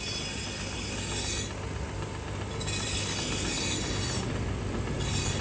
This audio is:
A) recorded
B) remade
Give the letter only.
A